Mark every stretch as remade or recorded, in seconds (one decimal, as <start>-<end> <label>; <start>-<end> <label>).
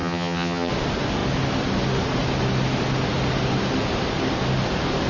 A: 0.0-0.7 remade; 0.7-5.1 recorded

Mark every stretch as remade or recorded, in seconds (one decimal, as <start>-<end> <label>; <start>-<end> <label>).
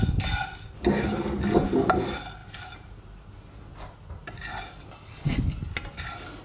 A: 0.0-6.4 recorded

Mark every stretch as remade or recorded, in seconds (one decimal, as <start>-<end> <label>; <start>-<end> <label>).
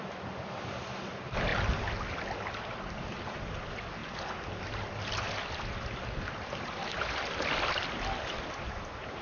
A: 0.0-9.2 recorded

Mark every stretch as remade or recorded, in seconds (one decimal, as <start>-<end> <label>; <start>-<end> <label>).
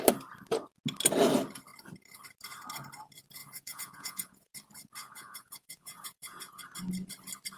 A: 0.0-3.4 recorded; 3.4-4.5 remade; 4.5-5.0 recorded; 5.0-6.6 remade; 6.6-7.6 recorded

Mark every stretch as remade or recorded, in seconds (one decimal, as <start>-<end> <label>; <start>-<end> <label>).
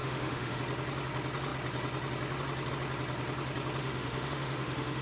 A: 0.0-0.6 remade; 0.6-3.8 recorded; 3.8-5.0 remade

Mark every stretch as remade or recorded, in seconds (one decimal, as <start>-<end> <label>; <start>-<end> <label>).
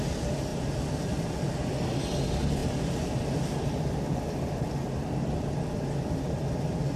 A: 0.0-0.5 recorded; 0.5-1.5 remade; 1.5-7.0 recorded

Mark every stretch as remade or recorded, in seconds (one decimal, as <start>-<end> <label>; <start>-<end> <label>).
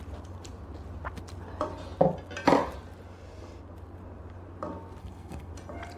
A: 0.0-5.0 recorded; 5.0-5.5 remade; 5.5-6.0 recorded